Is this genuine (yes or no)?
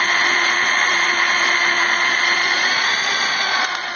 no